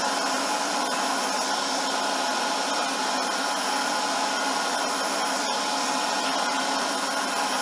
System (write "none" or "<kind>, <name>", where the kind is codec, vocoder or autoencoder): none